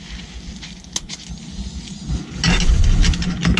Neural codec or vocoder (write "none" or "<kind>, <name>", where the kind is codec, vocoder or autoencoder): none